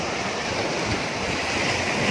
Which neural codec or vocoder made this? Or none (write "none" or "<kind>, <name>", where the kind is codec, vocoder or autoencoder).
none